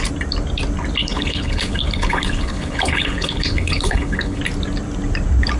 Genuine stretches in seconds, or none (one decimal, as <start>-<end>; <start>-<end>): 0.0-1.0; 4.4-5.6